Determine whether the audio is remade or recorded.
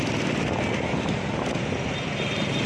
recorded